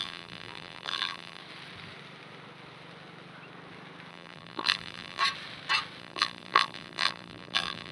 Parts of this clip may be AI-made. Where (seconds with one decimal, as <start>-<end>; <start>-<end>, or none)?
0.0-1.4; 4.1-5.2; 6.0-7.9